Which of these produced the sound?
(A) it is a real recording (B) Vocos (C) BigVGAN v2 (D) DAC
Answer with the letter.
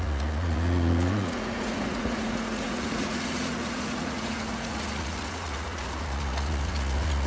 B